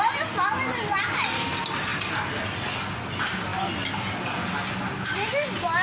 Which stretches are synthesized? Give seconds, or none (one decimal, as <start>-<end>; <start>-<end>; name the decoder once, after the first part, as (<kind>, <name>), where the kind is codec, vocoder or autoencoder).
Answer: none

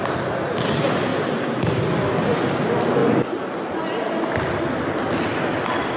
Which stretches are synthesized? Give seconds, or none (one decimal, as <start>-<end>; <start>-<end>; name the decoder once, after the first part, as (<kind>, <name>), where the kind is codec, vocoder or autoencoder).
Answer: none

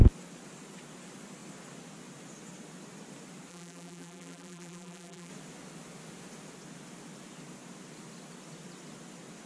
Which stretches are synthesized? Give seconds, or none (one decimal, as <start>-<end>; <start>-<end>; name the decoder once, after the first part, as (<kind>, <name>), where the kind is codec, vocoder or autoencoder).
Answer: 3.5-5.3 (vocoder, BigVGAN v2)

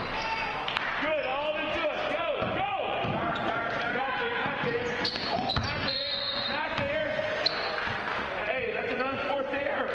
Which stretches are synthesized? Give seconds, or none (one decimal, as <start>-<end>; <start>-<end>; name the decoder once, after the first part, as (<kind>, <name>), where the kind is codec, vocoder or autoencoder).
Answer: 2.2-7.2 (vocoder, Vocos); 8.2-9.5

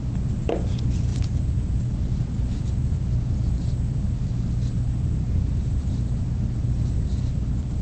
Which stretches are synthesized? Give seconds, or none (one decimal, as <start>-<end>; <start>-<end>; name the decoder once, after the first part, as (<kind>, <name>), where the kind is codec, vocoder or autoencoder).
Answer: none

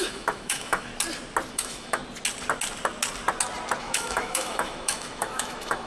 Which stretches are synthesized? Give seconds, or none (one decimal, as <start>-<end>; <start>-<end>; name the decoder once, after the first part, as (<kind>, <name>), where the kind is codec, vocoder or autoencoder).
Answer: 0.0-0.9 (autoencoder, DAC-VAE); 1.5-2.0; 3.8-5.9

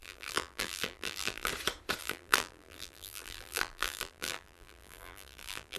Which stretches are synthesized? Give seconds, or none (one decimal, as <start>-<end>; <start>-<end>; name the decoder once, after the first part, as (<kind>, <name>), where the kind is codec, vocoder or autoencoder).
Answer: 0.0-1.5 (vocoder, BigVGAN v2); 2.0-5.8